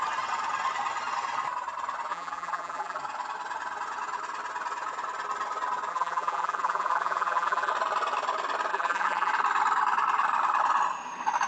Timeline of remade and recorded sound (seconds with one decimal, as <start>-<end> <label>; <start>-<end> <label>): 0.0-2.1 recorded; 2.1-3.0 remade; 3.0-5.9 recorded; 5.9-7.7 remade; 7.7-8.7 recorded; 8.7-9.3 remade; 9.3-11.5 recorded